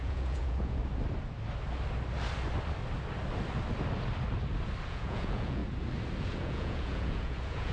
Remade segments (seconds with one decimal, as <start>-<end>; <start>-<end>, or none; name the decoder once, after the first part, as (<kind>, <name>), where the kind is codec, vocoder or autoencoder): 0.0-0.8 (vocoder, Vocos); 4.9-5.6; 6.2-7.7